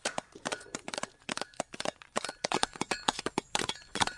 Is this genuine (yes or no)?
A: no